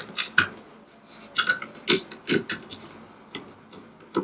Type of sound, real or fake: real